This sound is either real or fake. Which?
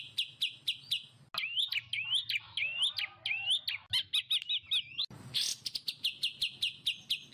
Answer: real